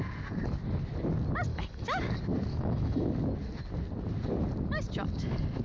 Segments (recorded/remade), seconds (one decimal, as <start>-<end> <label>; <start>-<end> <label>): 0.0-1.5 recorded; 1.5-2.1 remade; 2.1-2.5 recorded; 2.5-3.1 remade; 3.1-5.6 recorded